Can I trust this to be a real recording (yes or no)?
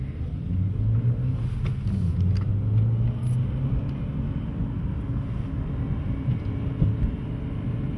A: yes